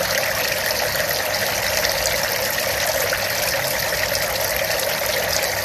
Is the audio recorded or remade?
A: recorded